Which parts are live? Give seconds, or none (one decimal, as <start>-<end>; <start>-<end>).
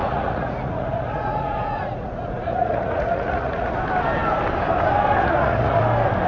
3.8-5.2; 5.8-6.3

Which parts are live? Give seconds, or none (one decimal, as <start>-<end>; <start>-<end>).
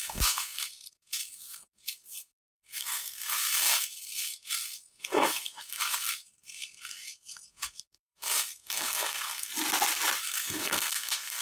9.5-10.2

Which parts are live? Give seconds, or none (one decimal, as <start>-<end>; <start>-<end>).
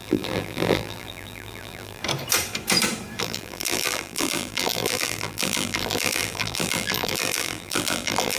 2.0-3.2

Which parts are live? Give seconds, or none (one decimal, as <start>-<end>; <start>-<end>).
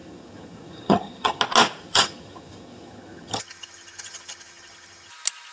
1.4-1.8; 5.1-5.5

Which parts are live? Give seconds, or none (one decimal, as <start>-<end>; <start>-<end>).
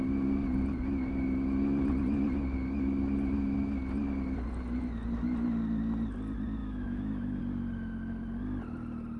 0.0-6.6; 7.4-9.2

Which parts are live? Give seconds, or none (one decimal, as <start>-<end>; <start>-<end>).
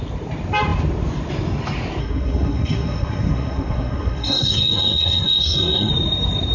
0.0-2.0; 5.9-6.5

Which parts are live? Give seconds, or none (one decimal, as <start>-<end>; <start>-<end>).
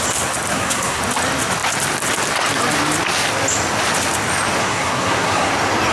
0.0-0.5; 1.0-4.6; 5.5-5.9